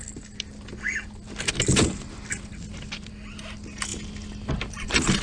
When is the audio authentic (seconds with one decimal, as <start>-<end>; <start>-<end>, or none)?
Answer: 0.0-5.2